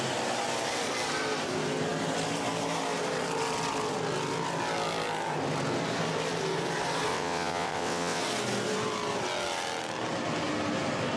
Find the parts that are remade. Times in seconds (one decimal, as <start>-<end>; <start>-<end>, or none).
7.1-8.2